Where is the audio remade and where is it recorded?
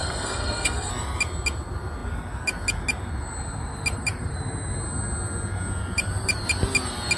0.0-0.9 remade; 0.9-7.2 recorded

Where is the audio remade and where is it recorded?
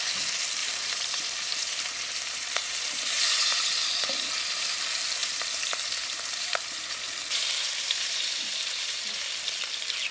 0.0-0.6 recorded; 0.6-4.8 remade; 4.8-5.2 recorded; 5.2-9.2 remade; 9.2-10.1 recorded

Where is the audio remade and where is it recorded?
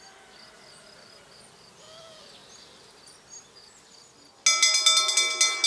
0.0-5.7 recorded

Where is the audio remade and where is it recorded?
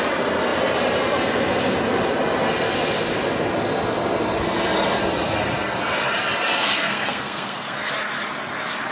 0.0-6.8 recorded; 6.8-7.9 remade; 7.9-8.9 recorded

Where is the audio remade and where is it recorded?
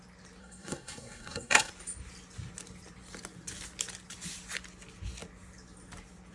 0.0-0.4 recorded; 0.4-1.7 remade; 1.7-6.3 recorded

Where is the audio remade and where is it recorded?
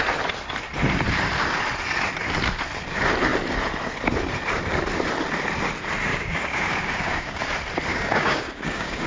0.0-6.1 recorded; 6.1-7.4 remade; 7.4-7.9 recorded; 7.9-9.1 remade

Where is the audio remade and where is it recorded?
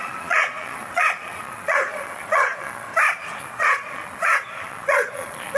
0.0-2.9 remade; 2.9-3.4 recorded; 3.4-5.6 remade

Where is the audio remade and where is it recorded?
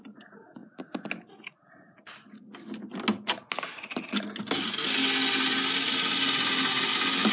0.0-7.3 recorded